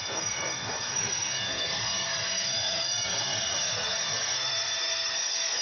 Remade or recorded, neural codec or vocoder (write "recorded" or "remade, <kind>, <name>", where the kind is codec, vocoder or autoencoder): remade, codec, SNAC